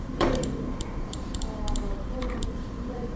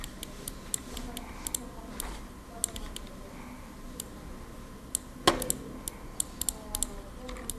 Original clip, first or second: second